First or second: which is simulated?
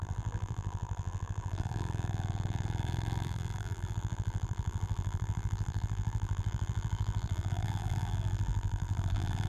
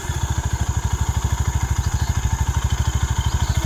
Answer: first